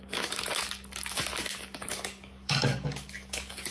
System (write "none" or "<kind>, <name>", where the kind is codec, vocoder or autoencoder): codec, DAC